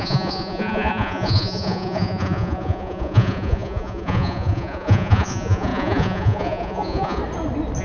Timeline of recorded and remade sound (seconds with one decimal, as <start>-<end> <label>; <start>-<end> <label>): 0.0-7.2 remade; 7.2-7.8 recorded